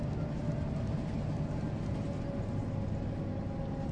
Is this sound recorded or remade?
recorded